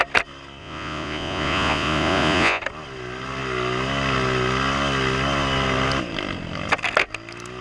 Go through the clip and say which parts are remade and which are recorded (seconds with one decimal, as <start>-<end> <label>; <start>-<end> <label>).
0.0-0.6 recorded; 0.6-2.6 remade; 2.6-7.6 recorded

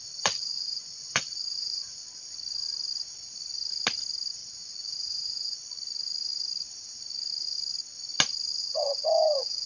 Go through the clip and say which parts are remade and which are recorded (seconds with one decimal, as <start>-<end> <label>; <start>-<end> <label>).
0.0-2.1 remade; 2.1-4.4 recorded; 4.4-5.6 remade; 5.6-8.6 recorded; 8.6-9.7 remade

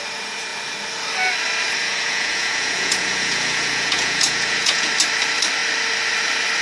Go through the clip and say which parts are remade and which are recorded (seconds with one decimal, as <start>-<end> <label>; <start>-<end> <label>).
0.0-1.8 recorded; 1.8-4.9 remade; 4.9-6.6 recorded